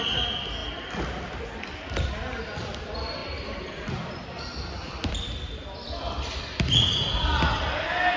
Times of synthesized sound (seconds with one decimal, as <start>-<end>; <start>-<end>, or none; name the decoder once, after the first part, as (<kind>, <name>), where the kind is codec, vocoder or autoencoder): none